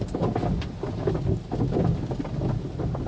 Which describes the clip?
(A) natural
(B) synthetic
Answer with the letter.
A